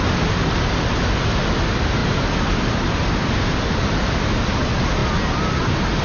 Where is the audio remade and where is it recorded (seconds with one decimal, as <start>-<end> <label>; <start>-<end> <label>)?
0.0-6.0 recorded